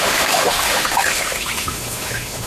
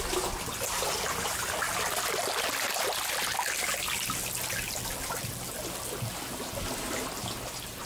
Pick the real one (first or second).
second